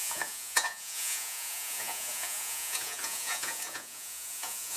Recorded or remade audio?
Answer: remade